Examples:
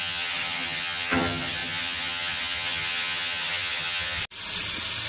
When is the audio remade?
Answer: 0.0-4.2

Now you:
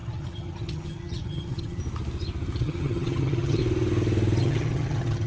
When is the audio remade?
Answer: 0.0-1.8; 2.6-3.6; 4.4-5.3

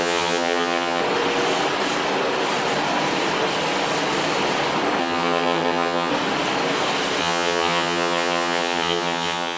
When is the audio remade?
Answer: 0.0-1.0; 5.0-6.1; 7.2-9.6

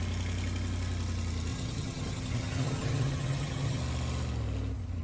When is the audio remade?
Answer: 1.5-3.8